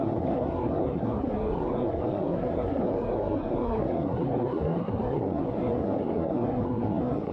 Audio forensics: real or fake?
fake